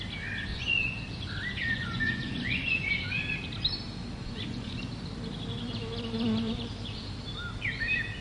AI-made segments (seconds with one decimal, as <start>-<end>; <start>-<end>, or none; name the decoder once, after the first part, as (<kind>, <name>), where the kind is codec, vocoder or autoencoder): 0.5-1.0 (vocoder, Vocos); 1.5-3.2; 4.2-4.8